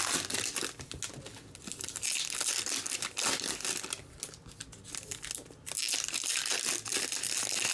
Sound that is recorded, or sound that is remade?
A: recorded